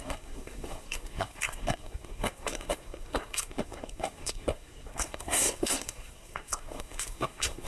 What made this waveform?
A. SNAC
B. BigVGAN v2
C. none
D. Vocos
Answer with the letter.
A